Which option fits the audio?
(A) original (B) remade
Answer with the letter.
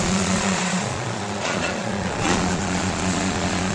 B